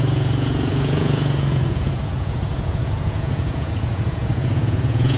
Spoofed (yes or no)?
yes